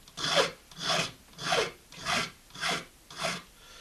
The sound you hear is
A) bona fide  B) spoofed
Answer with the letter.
A